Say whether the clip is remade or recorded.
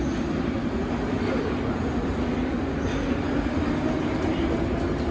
recorded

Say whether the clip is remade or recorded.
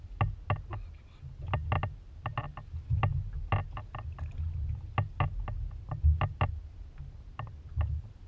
recorded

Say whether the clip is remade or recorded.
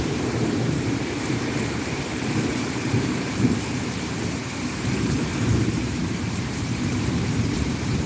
remade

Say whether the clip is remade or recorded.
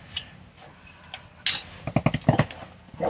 recorded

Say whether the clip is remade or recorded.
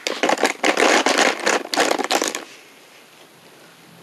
recorded